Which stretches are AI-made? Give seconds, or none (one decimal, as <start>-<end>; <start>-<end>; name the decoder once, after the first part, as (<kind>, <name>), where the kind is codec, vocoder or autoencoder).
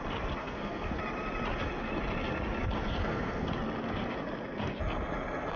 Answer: 0.4-0.9 (codec, SNAC); 3.0-3.5